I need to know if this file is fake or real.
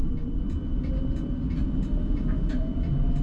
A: real